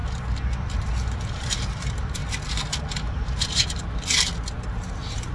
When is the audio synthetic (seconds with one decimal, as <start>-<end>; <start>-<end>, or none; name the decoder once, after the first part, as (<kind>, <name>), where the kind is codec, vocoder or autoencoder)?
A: 0.0-2.2 (vocoder, BigVGAN v2); 2.8-3.6; 4.7-5.3